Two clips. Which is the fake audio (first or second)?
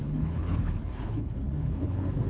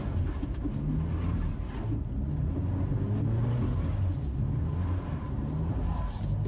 first